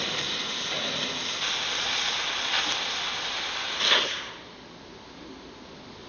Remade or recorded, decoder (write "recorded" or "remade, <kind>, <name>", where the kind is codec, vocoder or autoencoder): recorded